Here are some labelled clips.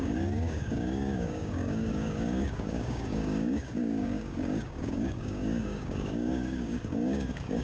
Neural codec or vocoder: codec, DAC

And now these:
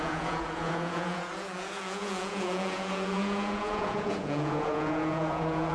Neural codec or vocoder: vocoder, Vocos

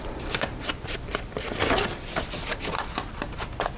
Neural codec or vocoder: none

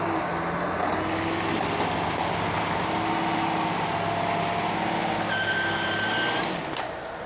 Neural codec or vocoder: none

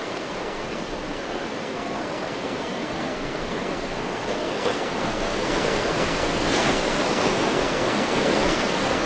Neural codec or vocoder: codec, SNAC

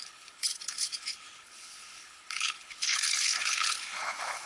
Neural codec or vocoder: codec, HILCodec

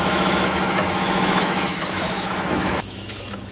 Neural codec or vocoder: autoencoder, DAC-VAE